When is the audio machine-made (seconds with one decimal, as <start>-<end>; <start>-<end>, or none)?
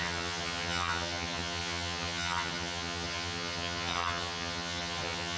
0.0-5.4